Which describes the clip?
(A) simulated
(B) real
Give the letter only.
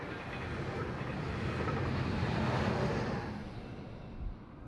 B